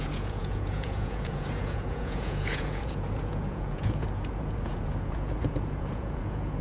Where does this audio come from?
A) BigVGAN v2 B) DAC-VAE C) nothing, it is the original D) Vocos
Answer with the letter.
D